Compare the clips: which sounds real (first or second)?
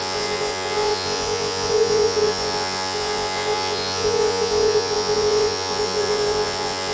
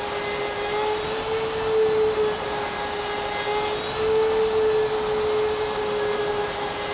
second